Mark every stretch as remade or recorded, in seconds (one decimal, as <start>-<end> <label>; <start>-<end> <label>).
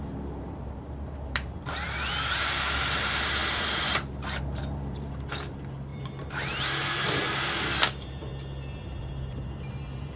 0.0-8.3 remade; 8.3-8.8 recorded; 8.8-10.2 remade